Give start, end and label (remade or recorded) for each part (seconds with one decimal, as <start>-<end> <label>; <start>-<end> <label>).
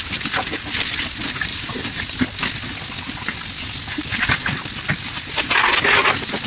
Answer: 0.0-1.5 recorded; 1.5-2.0 remade; 2.0-4.1 recorded; 4.1-5.7 remade; 5.7-6.5 recorded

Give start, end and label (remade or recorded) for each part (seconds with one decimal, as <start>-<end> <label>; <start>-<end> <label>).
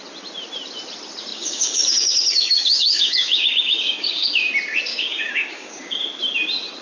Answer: 0.0-1.3 recorded; 1.3-4.5 remade; 4.5-4.9 recorded; 4.9-6.0 remade; 6.0-6.8 recorded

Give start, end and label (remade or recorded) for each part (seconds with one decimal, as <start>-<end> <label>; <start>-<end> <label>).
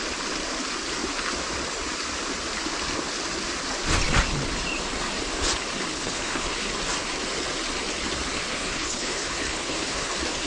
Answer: 0.0-5.9 recorded; 5.9-6.6 remade; 6.6-8.5 recorded; 8.5-10.1 remade; 10.1-10.5 recorded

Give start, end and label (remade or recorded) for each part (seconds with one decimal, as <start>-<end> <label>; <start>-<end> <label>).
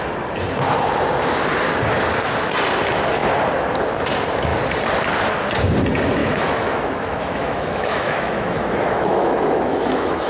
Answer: 0.0-6.2 recorded; 6.2-10.3 remade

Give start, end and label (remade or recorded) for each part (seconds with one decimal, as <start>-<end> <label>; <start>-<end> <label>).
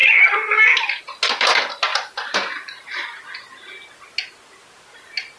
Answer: 0.0-1.9 recorded; 1.9-3.0 remade; 3.0-5.4 recorded